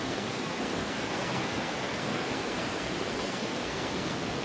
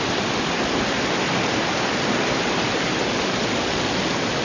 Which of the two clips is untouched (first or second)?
second